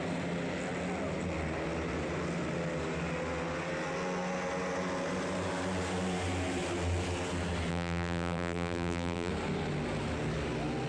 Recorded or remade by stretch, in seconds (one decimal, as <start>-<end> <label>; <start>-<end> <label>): 0.0-7.7 recorded; 7.7-9.3 remade; 9.3-10.9 recorded